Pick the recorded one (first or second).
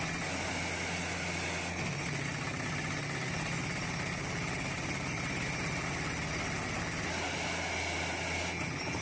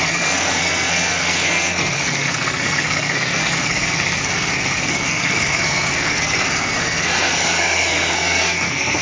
first